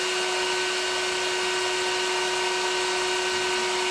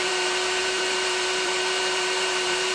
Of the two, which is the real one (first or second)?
first